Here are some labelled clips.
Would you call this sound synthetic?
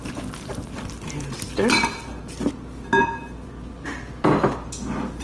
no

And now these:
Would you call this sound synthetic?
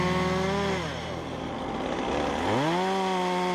no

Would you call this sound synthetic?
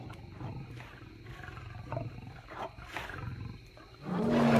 no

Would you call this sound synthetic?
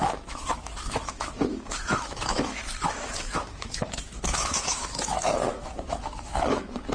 yes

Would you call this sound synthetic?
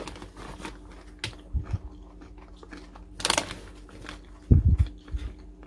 no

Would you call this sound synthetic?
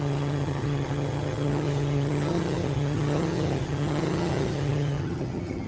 yes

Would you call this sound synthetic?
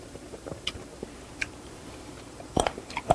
yes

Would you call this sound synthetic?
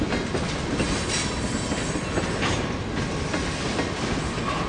no